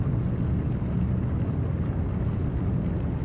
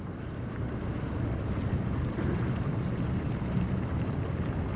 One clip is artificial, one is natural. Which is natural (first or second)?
first